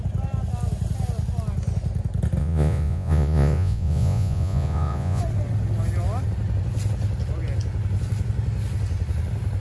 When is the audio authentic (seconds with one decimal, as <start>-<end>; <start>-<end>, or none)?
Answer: 0.0-2.4; 5.2-9.6